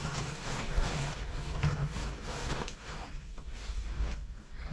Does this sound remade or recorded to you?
remade